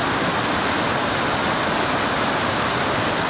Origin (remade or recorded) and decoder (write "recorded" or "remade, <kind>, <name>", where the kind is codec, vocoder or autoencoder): recorded